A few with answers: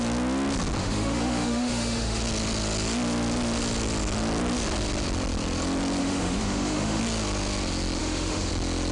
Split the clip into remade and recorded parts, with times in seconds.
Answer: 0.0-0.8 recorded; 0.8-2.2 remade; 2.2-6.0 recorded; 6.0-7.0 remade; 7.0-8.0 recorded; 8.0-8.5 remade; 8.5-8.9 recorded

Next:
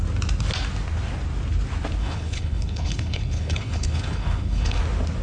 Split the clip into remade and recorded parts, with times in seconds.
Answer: 0.0-2.0 recorded; 2.0-4.8 remade; 4.8-5.2 recorded

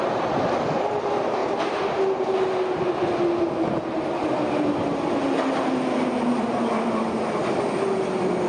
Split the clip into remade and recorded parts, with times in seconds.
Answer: 0.0-8.5 recorded

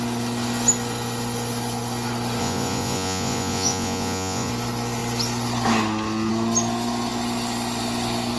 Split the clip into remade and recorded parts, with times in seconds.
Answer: 0.0-2.4 recorded; 2.4-4.5 remade; 4.5-8.4 recorded

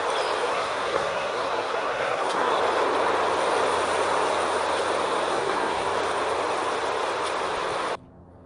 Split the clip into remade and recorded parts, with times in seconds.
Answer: 0.0-0.4 recorded; 0.4-2.6 remade; 2.6-5.3 recorded; 5.3-5.9 remade; 5.9-8.5 recorded

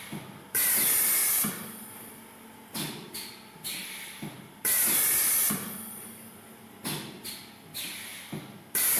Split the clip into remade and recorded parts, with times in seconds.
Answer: 0.0-9.0 recorded

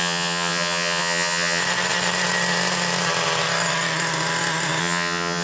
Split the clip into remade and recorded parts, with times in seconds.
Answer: 0.0-1.6 remade; 1.6-4.8 recorded; 4.8-5.4 remade